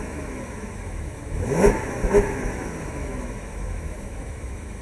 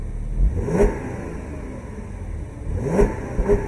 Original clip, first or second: second